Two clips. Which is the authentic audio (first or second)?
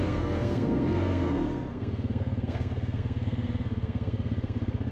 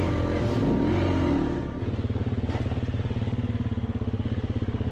second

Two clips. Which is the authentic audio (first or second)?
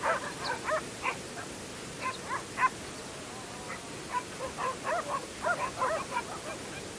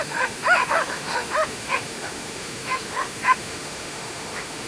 first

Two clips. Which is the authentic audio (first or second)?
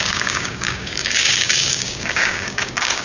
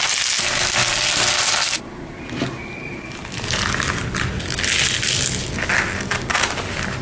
second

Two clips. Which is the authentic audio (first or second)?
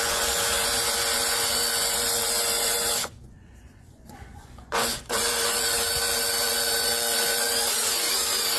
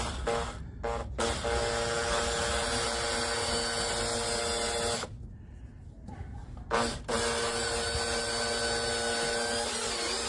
second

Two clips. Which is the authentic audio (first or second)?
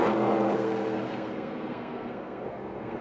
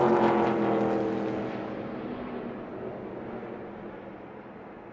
second